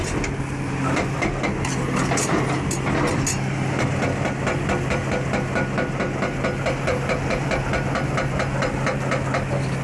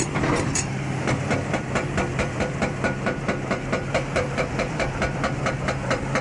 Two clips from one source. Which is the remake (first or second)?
second